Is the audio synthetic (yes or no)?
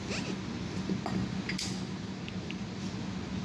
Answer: no